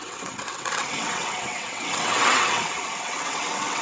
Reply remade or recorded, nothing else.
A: remade